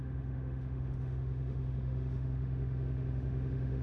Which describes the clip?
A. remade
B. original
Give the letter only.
A